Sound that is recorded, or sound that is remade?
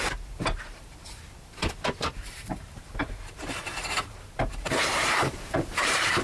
remade